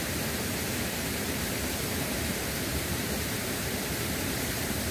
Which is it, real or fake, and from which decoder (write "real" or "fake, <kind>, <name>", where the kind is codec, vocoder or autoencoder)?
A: fake, vocoder, BigVGAN v2